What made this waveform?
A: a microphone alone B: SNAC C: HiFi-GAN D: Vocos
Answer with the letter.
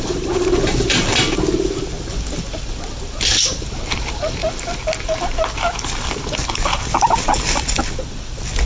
A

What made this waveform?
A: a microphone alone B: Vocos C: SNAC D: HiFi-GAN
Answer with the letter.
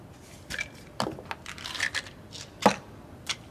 A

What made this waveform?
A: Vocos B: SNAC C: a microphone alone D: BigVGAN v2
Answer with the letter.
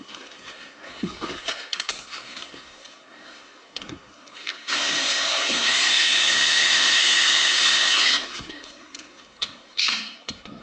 B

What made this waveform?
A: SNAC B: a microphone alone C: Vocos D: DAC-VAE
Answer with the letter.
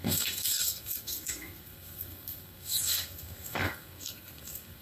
A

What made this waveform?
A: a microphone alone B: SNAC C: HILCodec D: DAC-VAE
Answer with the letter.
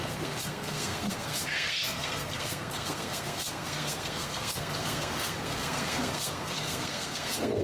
B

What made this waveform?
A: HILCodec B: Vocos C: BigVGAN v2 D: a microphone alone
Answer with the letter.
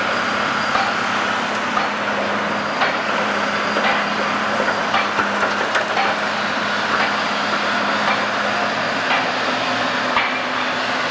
D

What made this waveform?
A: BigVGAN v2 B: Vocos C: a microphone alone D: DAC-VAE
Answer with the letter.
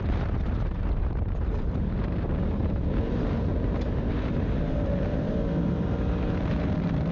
A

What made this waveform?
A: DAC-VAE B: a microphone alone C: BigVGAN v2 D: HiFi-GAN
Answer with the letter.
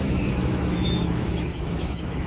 A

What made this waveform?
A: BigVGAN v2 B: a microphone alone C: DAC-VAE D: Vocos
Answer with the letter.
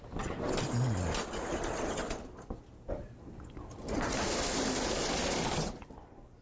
B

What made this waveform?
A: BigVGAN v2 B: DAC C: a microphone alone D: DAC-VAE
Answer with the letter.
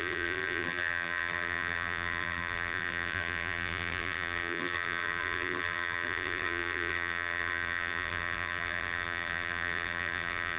A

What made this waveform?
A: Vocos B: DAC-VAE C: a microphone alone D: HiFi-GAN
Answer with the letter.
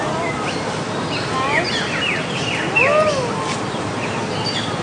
C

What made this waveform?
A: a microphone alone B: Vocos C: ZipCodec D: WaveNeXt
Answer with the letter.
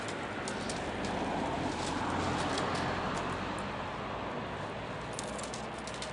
A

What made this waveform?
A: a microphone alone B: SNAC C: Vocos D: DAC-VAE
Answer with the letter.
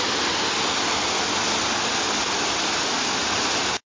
A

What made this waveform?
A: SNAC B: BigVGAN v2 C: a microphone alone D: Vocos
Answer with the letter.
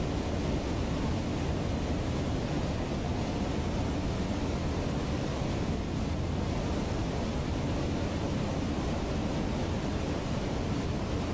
C